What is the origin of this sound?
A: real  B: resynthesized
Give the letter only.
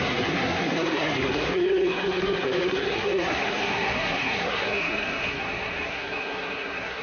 B